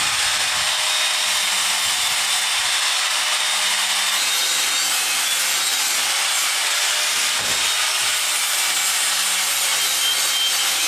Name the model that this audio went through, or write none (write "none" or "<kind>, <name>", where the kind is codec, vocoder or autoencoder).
none